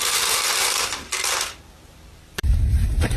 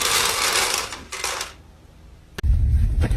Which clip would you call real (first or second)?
second